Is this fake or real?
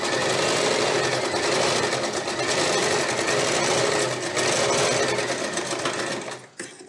real